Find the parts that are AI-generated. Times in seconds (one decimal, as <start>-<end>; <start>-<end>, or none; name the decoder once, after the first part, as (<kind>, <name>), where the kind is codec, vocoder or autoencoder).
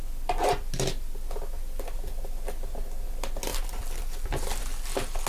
3.5-4.6 (vocoder, BigVGAN v2)